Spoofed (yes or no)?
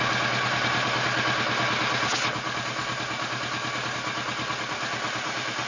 no